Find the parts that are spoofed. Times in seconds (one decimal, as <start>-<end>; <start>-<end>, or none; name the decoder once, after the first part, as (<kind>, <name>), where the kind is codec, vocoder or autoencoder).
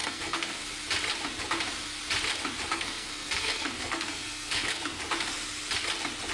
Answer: 0.0-0.6 (codec, SNAC); 2.7-5.0